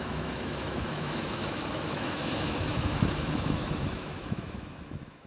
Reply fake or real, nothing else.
fake